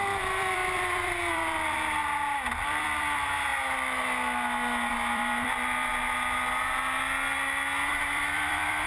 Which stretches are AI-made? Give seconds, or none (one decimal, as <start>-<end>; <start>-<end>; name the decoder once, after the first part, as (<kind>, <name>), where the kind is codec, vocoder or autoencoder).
0.0-2.0 (vocoder, BigVGAN v2); 2.6-3.5; 4.9-5.9; 7.9-8.9